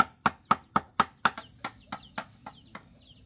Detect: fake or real real